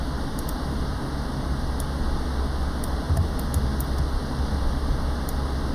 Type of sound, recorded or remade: recorded